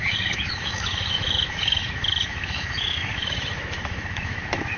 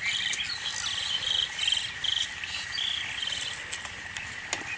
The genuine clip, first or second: second